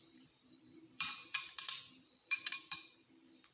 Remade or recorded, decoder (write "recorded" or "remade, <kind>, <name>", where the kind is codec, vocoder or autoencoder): remade, vocoder, BigVGAN v2